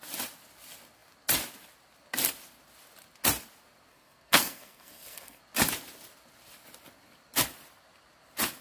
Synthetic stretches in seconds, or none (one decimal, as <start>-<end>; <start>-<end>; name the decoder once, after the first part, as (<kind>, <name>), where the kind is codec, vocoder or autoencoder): 3.9-5.4 (codec, SNAC)